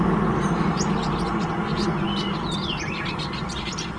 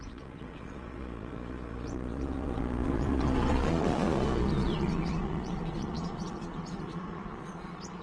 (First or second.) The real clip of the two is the first